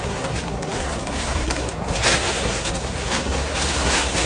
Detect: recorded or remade remade